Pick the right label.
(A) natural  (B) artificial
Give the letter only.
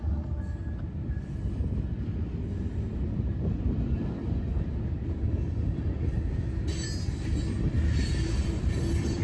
A